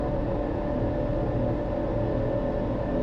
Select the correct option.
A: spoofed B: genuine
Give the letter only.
B